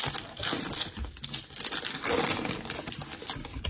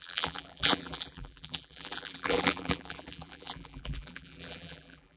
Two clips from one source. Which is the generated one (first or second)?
second